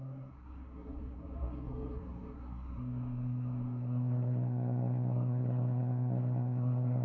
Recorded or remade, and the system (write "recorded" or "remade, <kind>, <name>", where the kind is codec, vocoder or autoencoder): remade, codec, SNAC